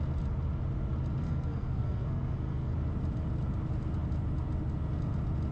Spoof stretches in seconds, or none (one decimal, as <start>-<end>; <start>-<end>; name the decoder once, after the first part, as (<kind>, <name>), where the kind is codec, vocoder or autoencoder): 1.2-2.7 (codec, SNAC)